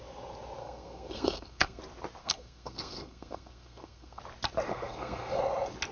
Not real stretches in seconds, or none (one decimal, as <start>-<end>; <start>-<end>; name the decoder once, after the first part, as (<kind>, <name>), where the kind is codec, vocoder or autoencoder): 0.6-1.8 (codec, SNAC); 2.2-4.2; 4.7-5.4